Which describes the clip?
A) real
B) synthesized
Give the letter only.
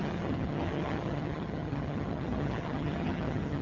B